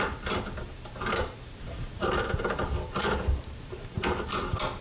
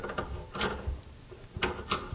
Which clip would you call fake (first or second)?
first